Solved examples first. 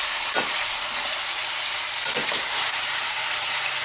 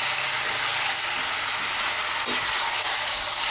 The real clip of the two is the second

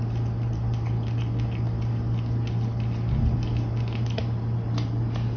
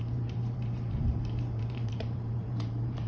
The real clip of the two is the first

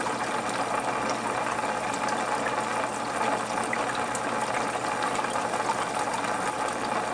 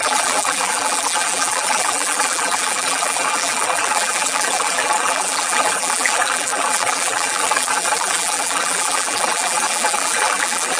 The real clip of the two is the first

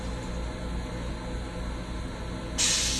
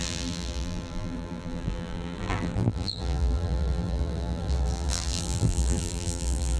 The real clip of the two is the first